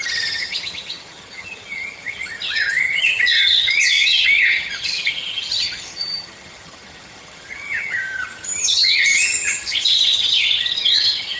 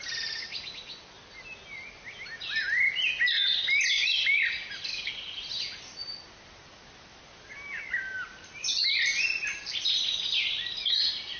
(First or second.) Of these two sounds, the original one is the second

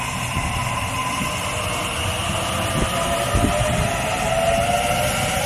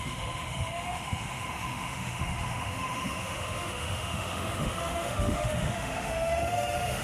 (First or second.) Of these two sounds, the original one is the first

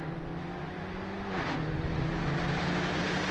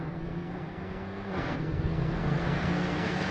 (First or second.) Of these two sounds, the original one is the first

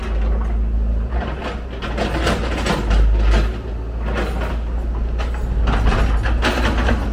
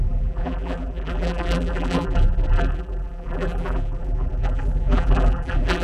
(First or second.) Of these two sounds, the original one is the first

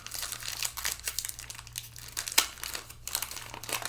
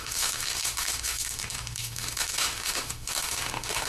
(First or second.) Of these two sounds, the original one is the first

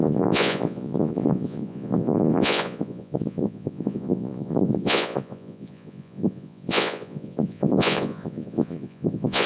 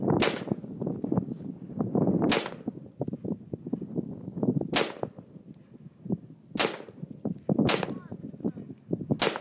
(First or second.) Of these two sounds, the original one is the second